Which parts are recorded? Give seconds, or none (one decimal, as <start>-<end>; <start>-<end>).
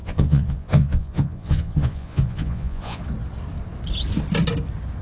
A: 3.0-5.0